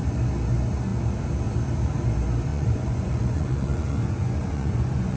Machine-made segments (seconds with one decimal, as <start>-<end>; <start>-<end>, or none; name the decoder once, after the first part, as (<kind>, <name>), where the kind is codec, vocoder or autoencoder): 2.5-5.2 (vocoder, Vocos)